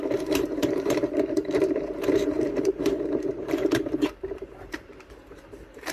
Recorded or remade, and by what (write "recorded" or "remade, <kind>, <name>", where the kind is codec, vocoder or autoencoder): remade, vocoder, BigVGAN v2